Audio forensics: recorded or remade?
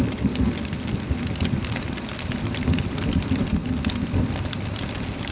recorded